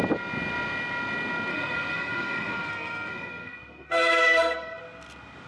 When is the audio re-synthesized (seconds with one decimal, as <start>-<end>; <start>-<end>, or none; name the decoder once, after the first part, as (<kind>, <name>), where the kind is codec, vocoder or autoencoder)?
1.5-4.8 (codec, SNAC)